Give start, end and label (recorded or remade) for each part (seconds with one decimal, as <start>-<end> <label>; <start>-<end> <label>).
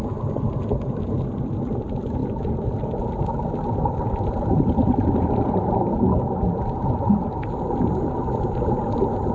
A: 0.0-9.3 recorded